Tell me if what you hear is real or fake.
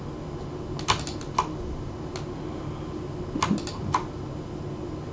real